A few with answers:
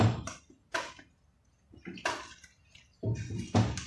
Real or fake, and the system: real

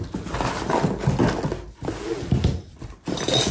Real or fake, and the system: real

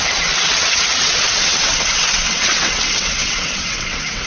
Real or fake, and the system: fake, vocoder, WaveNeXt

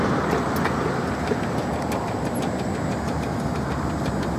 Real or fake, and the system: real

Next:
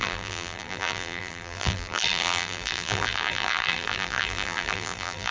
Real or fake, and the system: fake, vocoder, BigVGAN v2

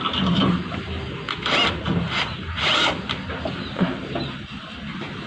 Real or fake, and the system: real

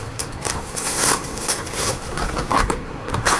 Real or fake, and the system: fake, codec, SNAC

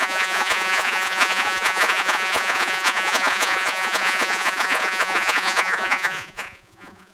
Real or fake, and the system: fake, vocoder, Vocos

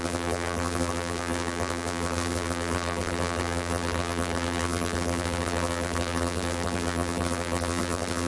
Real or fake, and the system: fake, vocoder, BigVGAN v2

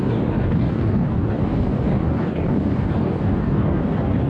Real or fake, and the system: fake, codec, DAC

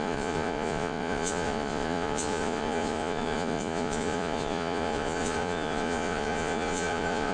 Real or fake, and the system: fake, vocoder, Vocos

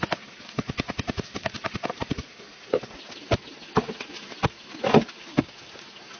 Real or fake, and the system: fake, vocoder, BigVGAN v2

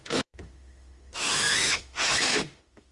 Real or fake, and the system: fake, autoencoder, DAC-VAE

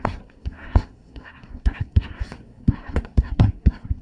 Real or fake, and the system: fake, codec, SNAC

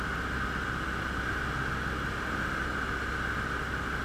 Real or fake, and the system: real